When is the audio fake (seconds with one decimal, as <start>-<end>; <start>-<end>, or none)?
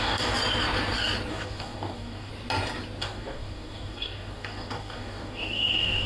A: 0.0-0.4; 1.3-2.3; 3.0-6.1